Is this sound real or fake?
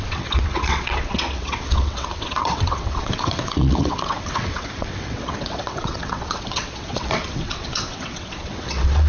fake